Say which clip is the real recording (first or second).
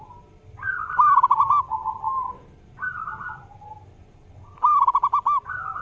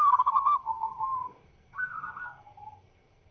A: first